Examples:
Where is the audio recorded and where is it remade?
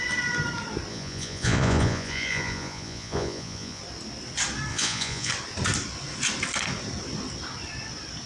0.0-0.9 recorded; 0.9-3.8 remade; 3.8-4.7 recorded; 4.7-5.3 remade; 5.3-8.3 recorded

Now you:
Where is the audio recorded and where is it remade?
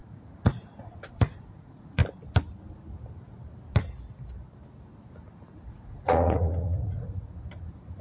0.0-2.0 remade; 2.0-5.7 recorded; 5.7-8.0 remade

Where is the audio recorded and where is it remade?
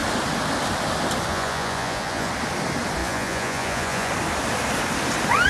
0.0-1.3 recorded; 1.3-2.3 remade; 2.3-3.0 recorded; 3.0-4.1 remade; 4.1-5.5 recorded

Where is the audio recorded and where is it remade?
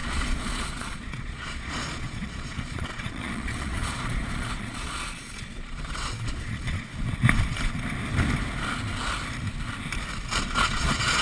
0.0-6.9 remade; 6.9-10.4 recorded; 10.4-11.2 remade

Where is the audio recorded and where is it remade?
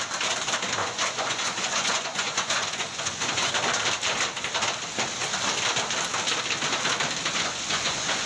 0.0-0.8 recorded; 0.8-3.5 remade; 3.5-7.3 recorded; 7.3-8.3 remade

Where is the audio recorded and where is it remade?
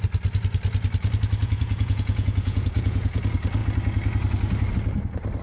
0.0-1.4 recorded; 1.4-3.2 remade; 3.2-5.4 recorded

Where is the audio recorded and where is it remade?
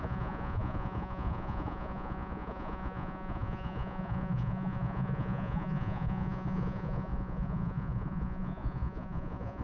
0.0-9.6 remade